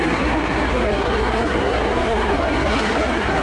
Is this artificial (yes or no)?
yes